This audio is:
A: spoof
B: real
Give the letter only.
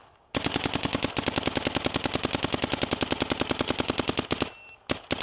B